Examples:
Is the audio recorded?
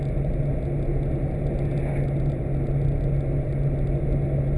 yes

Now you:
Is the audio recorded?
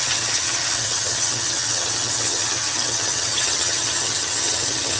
no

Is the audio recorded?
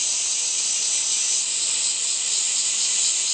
yes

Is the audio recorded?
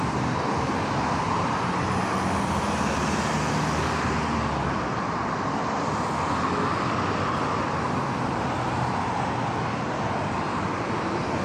yes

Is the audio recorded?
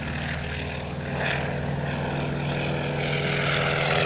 yes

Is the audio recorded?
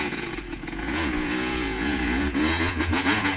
no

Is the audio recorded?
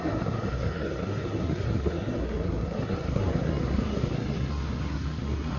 no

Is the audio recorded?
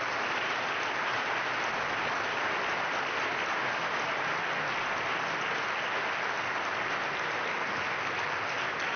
yes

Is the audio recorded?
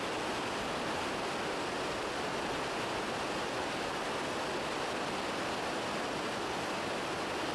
yes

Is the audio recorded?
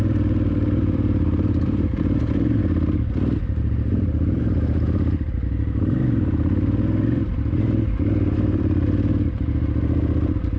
no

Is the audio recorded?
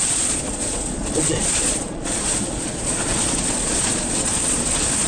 no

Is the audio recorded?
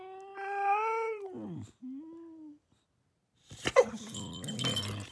yes